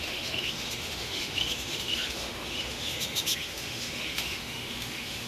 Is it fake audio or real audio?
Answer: fake